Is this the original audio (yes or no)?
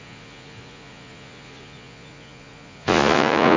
no